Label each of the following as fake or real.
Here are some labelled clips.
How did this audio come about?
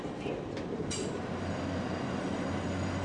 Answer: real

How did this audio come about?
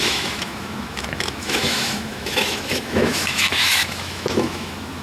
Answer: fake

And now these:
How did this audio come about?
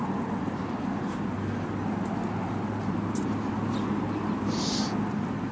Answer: real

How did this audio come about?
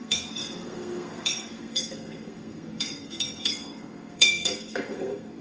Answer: fake